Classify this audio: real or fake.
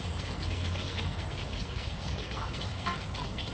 fake